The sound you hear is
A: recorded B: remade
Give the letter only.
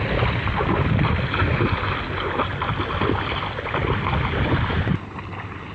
A